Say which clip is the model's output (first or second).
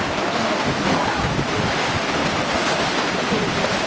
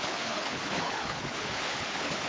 second